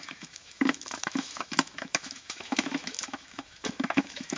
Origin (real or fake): fake